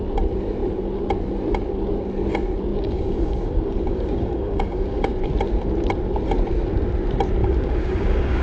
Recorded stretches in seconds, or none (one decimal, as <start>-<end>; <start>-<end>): 0.0-2.7; 5.3-7.4

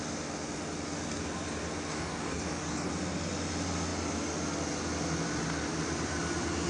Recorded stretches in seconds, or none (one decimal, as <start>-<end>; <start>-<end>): 0.0-1.9; 2.9-6.7

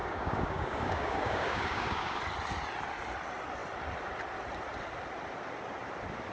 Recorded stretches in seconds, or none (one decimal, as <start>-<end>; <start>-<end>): 2.2-6.3

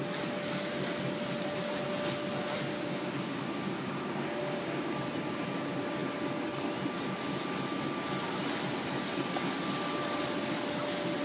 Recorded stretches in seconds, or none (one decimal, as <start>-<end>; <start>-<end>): 0.0-2.7; 5.1-11.2

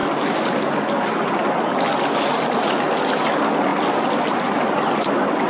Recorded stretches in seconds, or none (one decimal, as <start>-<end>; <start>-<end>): 0.0-5.5

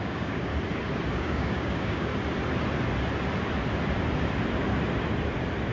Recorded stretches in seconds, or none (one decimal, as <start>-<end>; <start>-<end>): 0.5-1.1; 2.1-5.7